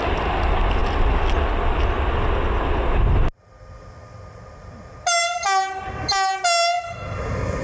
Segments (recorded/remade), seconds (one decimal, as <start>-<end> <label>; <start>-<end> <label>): 0.0-7.6 recorded